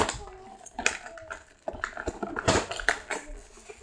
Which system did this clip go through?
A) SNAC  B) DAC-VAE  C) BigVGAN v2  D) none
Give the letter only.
D